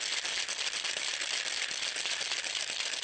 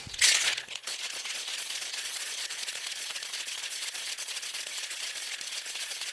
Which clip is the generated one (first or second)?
second